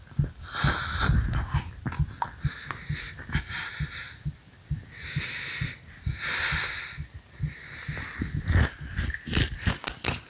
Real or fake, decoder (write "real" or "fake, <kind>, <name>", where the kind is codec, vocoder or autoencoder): real